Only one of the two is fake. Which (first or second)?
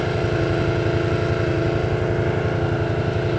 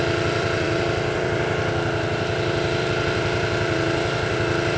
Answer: second